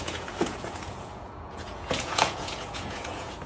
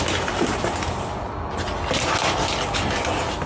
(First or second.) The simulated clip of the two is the first